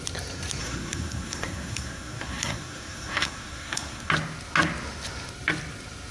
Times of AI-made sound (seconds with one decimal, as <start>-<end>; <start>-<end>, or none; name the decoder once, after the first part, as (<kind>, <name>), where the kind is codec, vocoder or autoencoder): 0.6-4.1 (codec, SNAC)